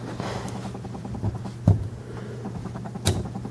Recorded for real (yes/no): yes